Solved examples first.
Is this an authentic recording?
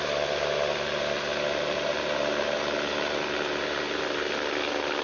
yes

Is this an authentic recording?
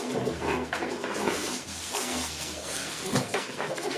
no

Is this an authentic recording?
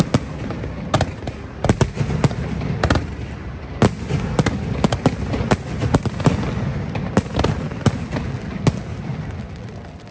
yes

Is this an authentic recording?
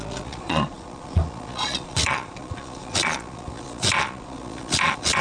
no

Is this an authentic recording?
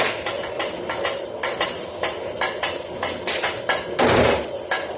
yes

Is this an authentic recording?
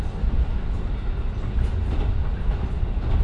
yes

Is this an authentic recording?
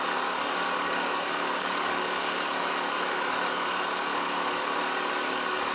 no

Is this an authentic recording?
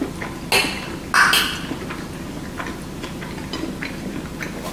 yes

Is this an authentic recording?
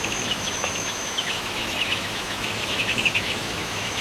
no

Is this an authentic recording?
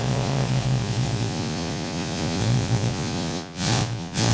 no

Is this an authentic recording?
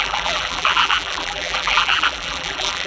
no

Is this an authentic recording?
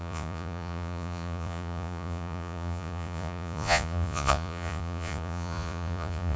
no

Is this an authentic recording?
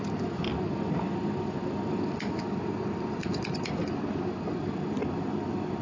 yes